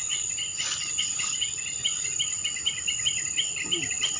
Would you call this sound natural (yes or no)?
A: yes